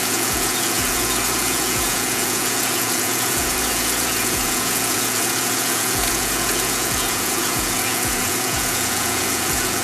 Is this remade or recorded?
remade